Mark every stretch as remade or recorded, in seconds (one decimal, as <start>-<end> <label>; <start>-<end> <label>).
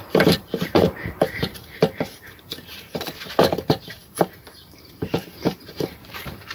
0.0-6.5 remade